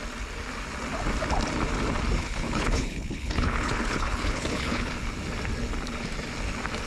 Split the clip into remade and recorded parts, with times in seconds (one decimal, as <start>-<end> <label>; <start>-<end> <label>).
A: 0.0-2.2 recorded; 2.2-4.9 remade; 4.9-6.9 recorded